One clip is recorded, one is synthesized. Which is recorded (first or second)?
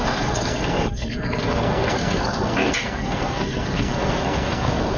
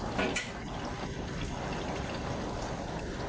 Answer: second